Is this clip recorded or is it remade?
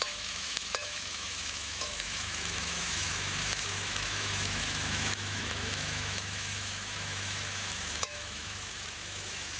remade